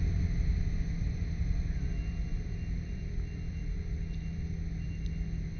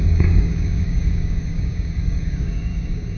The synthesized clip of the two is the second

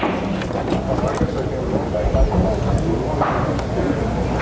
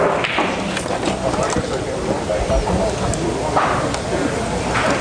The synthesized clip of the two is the second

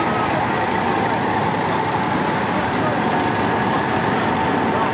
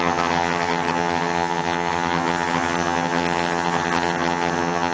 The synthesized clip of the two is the second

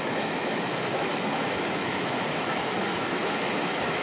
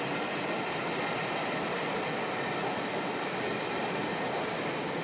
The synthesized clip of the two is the first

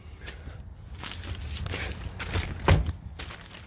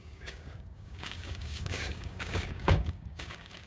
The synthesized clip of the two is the second